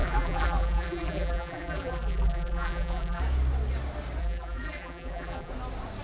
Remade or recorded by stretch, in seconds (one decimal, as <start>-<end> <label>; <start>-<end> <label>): 0.0-3.2 remade; 3.2-4.2 recorded; 4.2-5.5 remade; 5.5-6.0 recorded